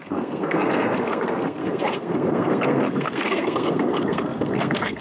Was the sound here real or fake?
fake